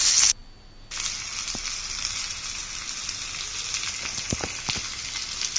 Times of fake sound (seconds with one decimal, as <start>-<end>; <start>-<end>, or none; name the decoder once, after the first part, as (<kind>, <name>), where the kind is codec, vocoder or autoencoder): none

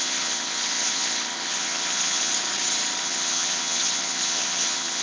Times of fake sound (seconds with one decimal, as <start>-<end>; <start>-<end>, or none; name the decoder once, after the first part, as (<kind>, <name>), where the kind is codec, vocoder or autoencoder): 0.0-2.3 (vocoder, HiFi-GAN); 3.0-5.0

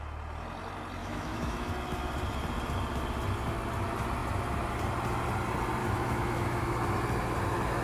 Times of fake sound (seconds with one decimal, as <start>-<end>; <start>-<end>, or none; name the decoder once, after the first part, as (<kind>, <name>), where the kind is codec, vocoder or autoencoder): 1.0-1.7 (autoencoder, DAC-VAE); 5.8-6.6

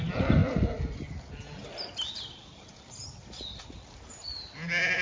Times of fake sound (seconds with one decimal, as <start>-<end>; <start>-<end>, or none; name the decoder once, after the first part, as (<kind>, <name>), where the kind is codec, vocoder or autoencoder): none

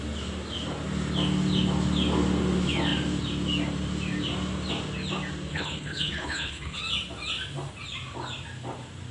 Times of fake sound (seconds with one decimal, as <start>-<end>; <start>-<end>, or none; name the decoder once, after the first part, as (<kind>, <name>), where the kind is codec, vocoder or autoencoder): 5.5-6.8 (codec, HILCodec)

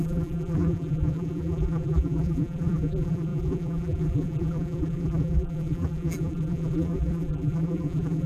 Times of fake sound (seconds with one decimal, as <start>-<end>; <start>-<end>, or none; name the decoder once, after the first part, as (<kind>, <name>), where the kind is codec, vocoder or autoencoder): 0.0-8.3 (vocoder, BigVGAN v2)

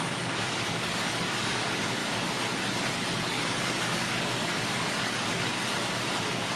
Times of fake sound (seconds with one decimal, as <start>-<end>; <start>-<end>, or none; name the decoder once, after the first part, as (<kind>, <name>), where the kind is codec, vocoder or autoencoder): 0.0-2.0 (codec, DAC); 2.9-5.5

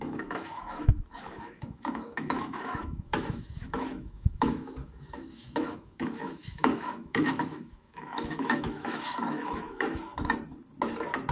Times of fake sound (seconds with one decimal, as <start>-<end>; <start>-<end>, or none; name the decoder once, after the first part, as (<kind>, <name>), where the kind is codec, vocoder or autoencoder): 0.0-10.1 (autoencoder, DAC-VAE)